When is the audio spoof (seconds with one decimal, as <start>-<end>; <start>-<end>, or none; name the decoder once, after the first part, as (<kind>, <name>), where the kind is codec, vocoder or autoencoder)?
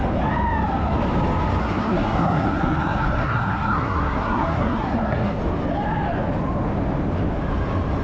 1.6-5.4 (codec, SNAC)